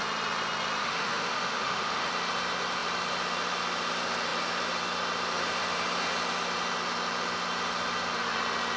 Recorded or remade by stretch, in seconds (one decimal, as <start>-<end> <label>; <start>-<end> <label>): 0.0-0.8 recorded; 0.8-2.1 remade; 2.1-8.8 recorded